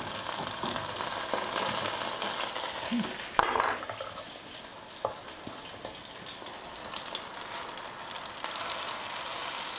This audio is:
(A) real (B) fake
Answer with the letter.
A